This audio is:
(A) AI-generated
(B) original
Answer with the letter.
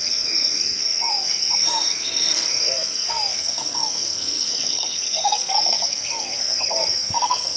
A